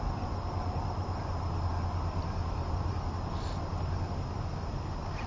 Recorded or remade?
recorded